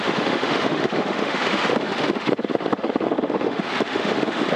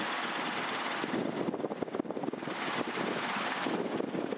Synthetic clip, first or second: first